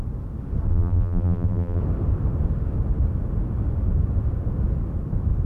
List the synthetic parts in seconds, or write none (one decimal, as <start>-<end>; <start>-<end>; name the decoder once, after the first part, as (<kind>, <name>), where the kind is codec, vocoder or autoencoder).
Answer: 0.7-1.8 (vocoder, BigVGAN v2)